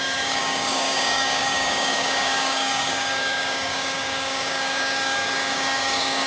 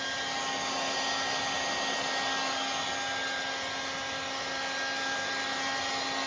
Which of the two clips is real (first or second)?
second